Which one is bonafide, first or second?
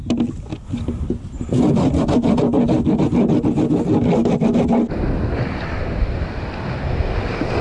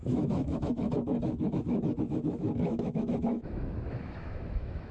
first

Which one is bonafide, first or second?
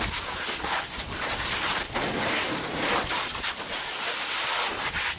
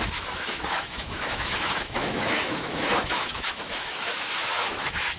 first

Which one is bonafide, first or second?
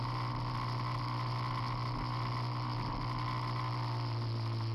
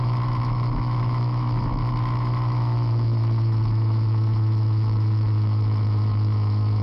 first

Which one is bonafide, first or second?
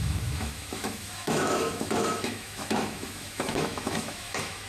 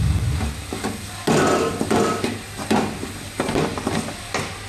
second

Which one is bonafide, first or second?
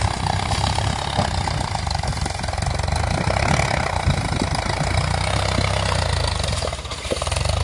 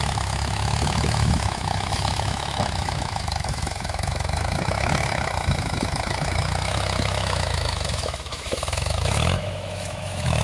first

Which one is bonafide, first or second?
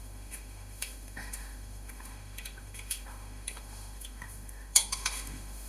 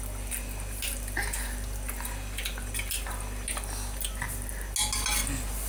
second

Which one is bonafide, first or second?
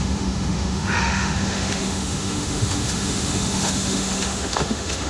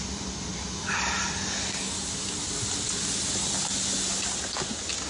second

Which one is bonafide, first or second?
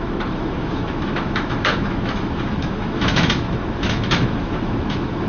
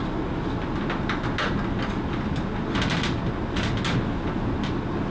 second